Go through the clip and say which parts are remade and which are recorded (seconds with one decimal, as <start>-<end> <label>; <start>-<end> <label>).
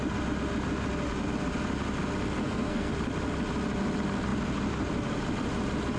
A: 0.0-2.4 recorded; 2.4-2.9 remade; 2.9-6.0 recorded